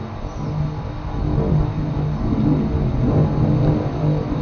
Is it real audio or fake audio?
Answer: real